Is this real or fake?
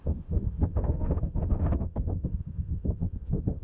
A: fake